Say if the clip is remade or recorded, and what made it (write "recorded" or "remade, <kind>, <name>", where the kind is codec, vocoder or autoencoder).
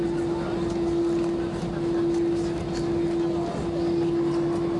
recorded